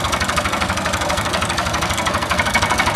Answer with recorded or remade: remade